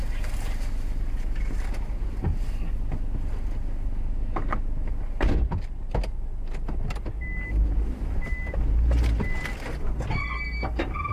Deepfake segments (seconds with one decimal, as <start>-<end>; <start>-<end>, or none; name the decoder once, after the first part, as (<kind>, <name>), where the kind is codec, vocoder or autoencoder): none